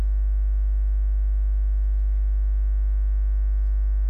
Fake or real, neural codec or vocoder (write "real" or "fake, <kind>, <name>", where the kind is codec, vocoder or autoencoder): real